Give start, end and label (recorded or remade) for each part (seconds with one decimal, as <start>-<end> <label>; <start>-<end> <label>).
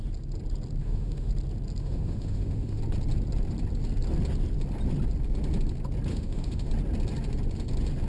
0.0-0.8 recorded; 0.8-1.3 remade; 1.3-1.8 recorded; 1.8-2.8 remade; 2.8-6.1 recorded; 6.1-6.7 remade; 6.7-8.1 recorded